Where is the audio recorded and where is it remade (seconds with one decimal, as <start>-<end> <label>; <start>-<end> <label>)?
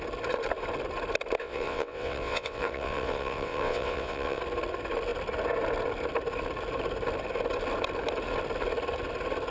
0.0-1.4 recorded; 1.4-4.4 remade; 4.4-9.5 recorded